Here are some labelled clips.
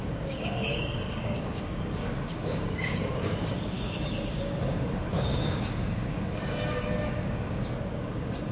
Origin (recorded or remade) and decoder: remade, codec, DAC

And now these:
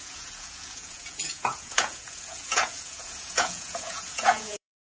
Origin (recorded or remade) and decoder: remade, vocoder, Vocos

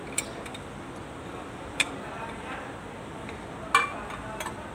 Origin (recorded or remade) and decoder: recorded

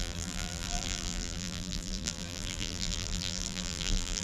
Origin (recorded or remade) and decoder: remade, vocoder, BigVGAN v2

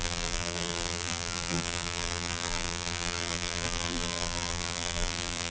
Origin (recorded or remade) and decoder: remade, vocoder, BigVGAN v2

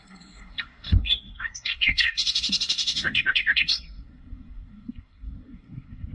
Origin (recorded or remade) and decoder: remade, codec, SNAC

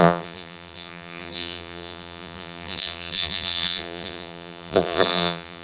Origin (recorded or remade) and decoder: remade, vocoder, BigVGAN v2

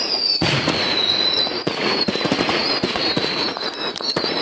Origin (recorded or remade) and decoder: remade, vocoder, Vocos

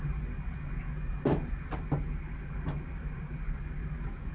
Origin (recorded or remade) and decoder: recorded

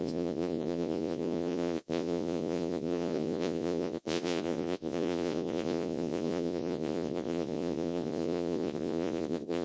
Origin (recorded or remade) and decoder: remade, vocoder, Vocos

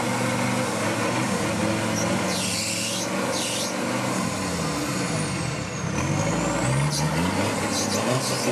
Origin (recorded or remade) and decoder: recorded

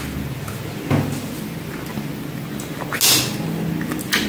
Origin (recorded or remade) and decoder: recorded